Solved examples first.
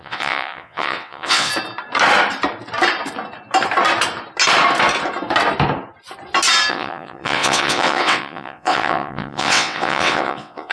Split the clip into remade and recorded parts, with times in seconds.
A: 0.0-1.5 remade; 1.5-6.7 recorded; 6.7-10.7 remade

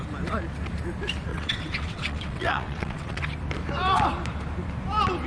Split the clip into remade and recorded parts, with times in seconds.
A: 0.0-1.3 recorded; 1.3-3.2 remade; 3.2-5.3 recorded

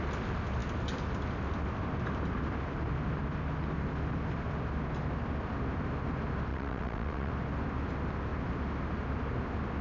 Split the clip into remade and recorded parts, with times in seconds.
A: 0.0-6.5 recorded; 6.5-7.3 remade; 7.3-9.8 recorded